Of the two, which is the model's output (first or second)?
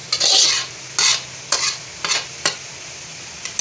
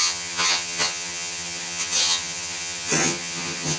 second